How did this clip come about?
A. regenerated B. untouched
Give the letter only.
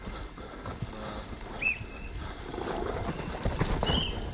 B